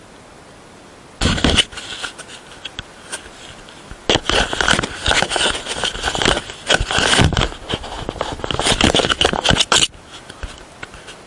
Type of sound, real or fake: real